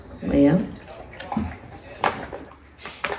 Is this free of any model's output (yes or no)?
yes